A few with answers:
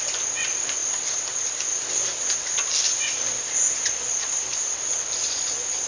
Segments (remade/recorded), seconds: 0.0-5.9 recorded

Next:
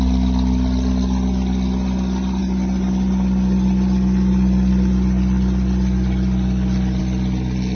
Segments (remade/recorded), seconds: 0.0-7.7 recorded

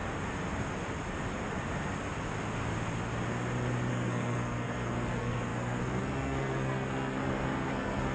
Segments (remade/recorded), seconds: 0.0-3.9 recorded; 3.9-8.1 remade